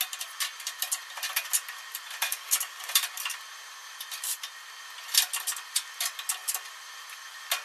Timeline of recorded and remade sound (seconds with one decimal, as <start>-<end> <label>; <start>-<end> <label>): 0.0-2.3 recorded; 2.3-2.9 remade; 2.9-7.6 recorded